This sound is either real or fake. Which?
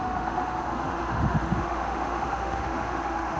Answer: fake